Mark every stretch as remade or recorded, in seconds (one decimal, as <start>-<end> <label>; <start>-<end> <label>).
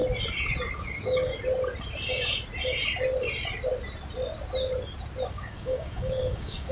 0.0-0.8 recorded; 0.8-1.3 remade; 1.3-5.3 recorded; 5.3-6.7 remade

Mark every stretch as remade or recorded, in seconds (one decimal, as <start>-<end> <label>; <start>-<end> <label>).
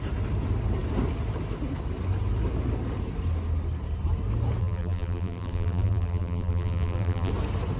0.0-4.6 recorded; 4.6-7.3 remade; 7.3-7.8 recorded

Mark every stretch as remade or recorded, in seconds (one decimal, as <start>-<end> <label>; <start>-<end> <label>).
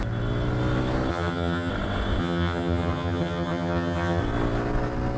0.0-1.1 recorded; 1.1-1.7 remade; 1.7-2.2 recorded; 2.2-4.2 remade; 4.2-5.2 recorded